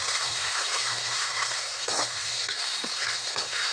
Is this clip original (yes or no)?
no